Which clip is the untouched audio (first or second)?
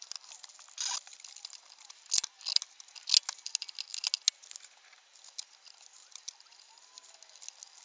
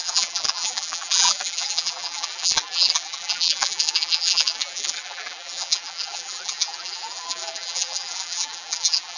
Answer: first